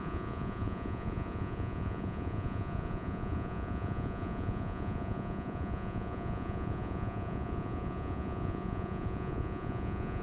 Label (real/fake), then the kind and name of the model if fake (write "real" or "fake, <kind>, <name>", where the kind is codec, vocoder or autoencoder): fake, vocoder, Vocos